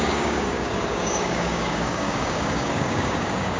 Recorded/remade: remade